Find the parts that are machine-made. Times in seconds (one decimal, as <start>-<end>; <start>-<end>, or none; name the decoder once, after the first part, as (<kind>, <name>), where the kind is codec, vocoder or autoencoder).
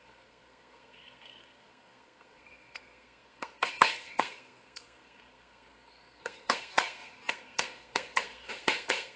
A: 0.0-9.2 (codec, SNAC)